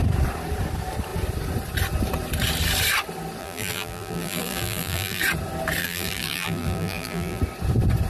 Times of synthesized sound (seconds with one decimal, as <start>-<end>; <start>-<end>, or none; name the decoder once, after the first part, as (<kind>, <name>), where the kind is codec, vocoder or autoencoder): 3.4-5.2 (vocoder, BigVGAN v2); 5.8-7.4